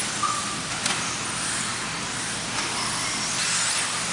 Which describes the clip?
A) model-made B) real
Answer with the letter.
B